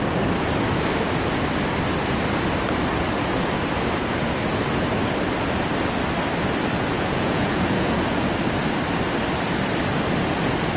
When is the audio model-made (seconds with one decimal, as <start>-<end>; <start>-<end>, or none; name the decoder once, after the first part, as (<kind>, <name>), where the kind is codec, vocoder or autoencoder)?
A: 6.9-8.3 (vocoder, Vocos)